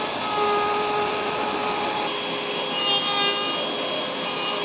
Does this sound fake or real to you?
real